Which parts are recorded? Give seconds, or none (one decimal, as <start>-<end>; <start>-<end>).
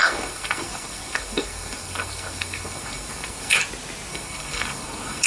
3.6-4.1